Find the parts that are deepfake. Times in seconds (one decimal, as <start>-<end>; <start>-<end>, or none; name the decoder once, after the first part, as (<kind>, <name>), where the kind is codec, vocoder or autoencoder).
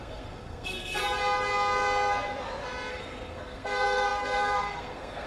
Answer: 0.0-1.0 (codec, SNAC); 2.9-5.3